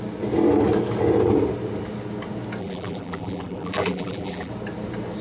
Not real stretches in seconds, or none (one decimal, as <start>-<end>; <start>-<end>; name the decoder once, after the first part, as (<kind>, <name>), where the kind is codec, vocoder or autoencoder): 2.6-4.5 (vocoder, BigVGAN v2)